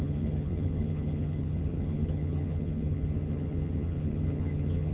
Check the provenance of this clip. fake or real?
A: fake